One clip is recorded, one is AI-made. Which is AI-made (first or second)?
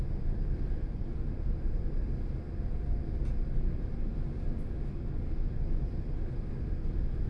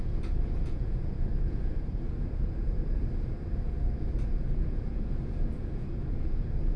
second